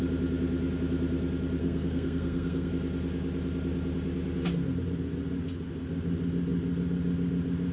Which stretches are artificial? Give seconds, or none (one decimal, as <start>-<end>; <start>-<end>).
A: 1.6-2.7